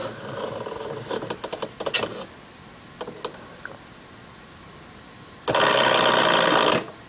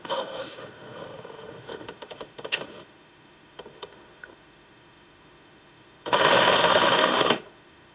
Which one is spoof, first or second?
second